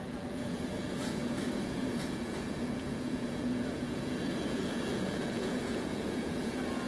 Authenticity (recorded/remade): remade